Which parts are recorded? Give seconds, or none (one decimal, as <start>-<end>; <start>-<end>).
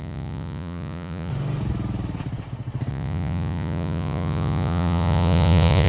1.3-2.9